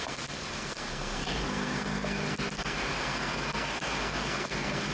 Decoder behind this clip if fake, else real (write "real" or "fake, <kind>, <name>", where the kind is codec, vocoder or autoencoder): fake, codec, SNAC